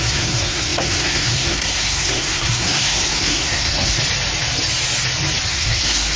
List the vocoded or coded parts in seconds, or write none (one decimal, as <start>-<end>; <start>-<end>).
0.0-4.0; 5.5-6.2